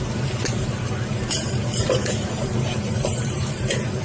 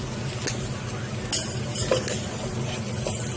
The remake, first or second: first